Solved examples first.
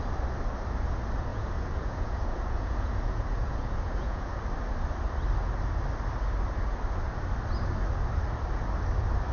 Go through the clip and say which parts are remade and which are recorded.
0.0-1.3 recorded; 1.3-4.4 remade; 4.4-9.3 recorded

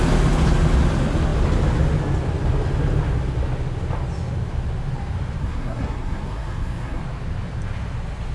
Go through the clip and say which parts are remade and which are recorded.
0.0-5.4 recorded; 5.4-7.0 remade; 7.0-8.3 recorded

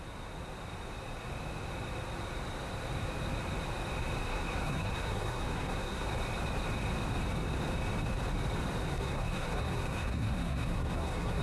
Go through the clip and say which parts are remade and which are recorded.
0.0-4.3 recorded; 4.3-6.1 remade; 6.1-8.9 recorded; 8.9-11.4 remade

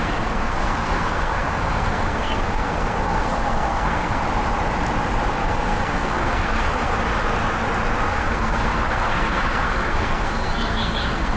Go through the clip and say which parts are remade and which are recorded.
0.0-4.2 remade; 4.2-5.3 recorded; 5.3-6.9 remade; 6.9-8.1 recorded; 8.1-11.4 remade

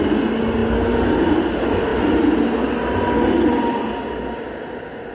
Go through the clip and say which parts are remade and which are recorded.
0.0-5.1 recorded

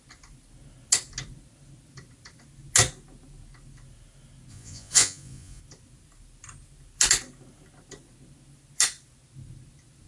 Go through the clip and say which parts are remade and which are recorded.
0.0-4.5 recorded; 4.5-5.6 remade; 5.6-10.1 recorded